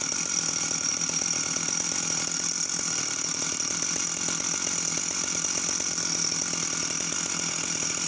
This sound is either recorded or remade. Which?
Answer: recorded